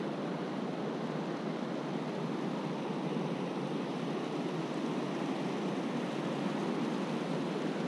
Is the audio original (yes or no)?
yes